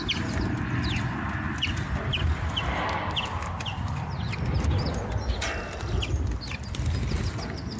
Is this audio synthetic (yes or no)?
no